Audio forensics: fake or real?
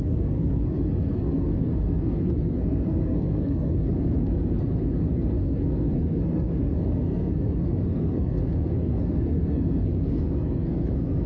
fake